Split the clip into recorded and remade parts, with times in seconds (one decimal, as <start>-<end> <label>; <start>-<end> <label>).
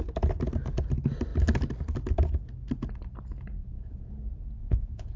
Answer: 0.0-3.6 recorded; 3.6-4.1 remade; 4.1-4.6 recorded; 4.6-5.2 remade